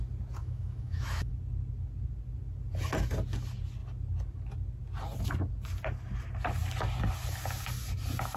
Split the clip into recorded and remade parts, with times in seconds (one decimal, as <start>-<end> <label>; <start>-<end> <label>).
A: 0.0-0.4 recorded; 0.4-1.3 remade; 1.3-8.4 recorded